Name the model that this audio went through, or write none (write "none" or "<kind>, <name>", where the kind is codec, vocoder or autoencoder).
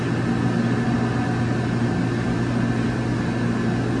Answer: none